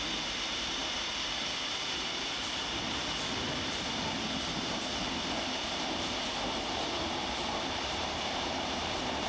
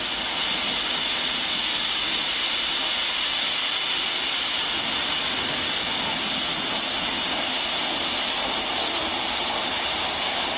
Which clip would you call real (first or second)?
second